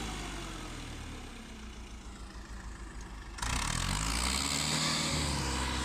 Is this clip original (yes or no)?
yes